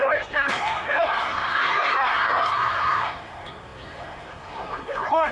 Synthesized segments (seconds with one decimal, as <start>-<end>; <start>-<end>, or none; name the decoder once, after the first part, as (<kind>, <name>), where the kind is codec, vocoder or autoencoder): 0.0-5.3 (codec, SNAC)